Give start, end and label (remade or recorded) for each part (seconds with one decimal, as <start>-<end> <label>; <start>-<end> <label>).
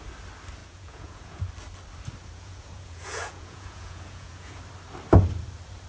0.0-0.6 recorded; 0.6-1.5 remade; 1.5-2.3 recorded; 2.3-4.6 remade; 4.6-5.9 recorded